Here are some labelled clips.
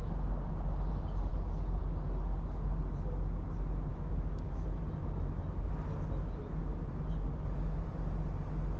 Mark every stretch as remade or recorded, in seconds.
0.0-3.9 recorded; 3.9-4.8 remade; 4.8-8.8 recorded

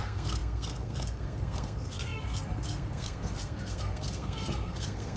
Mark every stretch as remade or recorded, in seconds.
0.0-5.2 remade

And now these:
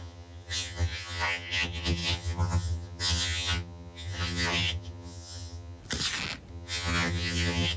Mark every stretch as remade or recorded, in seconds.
0.0-5.8 remade; 5.8-6.5 recorded; 6.5-7.8 remade

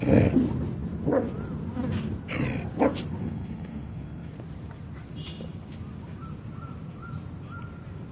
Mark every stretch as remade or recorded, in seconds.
0.0-3.2 recorded; 3.2-4.3 remade; 4.3-8.1 recorded